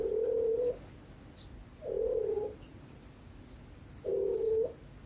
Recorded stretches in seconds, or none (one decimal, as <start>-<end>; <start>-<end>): 0.0-5.1

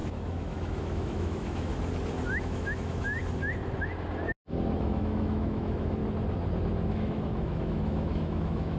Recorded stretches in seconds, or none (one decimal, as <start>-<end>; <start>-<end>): 1.7-2.3; 3.2-4.8; 6.0-6.9